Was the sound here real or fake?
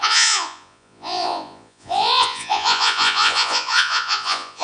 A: fake